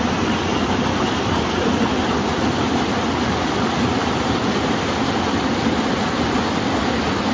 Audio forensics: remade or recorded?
recorded